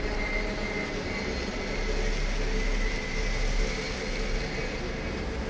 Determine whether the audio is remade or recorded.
recorded